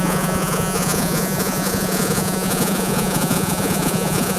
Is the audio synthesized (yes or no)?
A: yes